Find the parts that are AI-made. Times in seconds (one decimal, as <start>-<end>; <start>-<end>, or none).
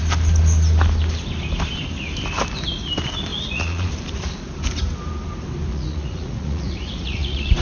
3.3-3.9; 5.7-7.6